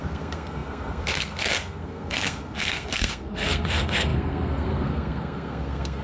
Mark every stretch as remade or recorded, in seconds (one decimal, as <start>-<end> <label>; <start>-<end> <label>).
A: 0.0-6.0 remade